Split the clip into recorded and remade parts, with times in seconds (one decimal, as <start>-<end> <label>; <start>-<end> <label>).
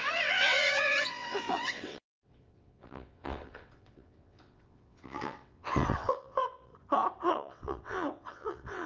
0.0-6.7 remade; 6.7-7.3 recorded; 7.3-8.9 remade